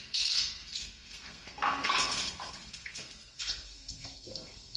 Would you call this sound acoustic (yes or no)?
no